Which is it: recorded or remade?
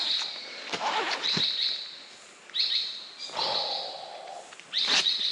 recorded